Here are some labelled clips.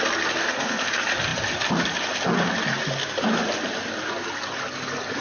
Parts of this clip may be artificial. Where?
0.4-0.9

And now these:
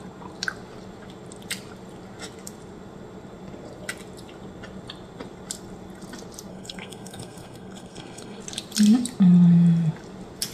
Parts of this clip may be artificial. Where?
6.5-8.4

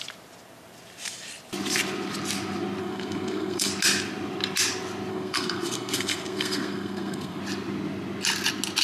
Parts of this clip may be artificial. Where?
2.8-3.7; 5.1-7.4

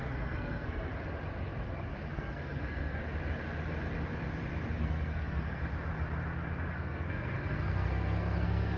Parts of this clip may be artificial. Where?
0.0-0.9; 2.1-3.0; 4.8-5.6; 6.7-8.8

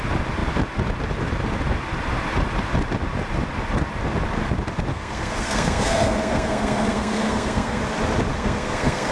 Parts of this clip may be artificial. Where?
4.9-7.8; 8.3-9.1